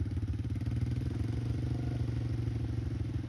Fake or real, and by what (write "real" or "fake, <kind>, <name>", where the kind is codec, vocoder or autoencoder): real